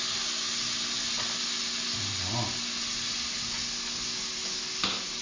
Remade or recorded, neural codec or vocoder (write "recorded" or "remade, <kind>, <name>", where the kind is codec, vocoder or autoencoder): recorded